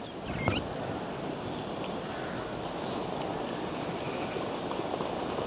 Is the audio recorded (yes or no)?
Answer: yes